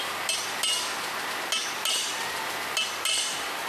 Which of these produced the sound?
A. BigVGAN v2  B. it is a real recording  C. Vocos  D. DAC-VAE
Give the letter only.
B